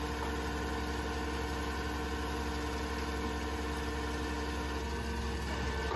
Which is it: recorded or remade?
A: recorded